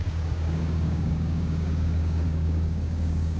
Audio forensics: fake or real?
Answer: fake